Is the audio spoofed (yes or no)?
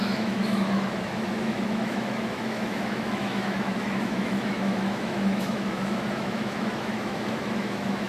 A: yes